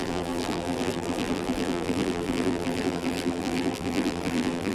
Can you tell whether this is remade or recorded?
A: remade